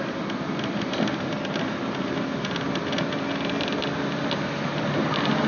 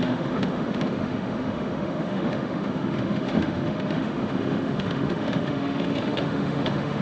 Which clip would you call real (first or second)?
first